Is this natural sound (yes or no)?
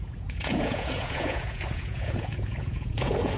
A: no